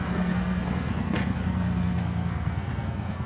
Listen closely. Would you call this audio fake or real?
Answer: fake